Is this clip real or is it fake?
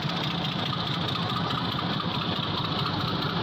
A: real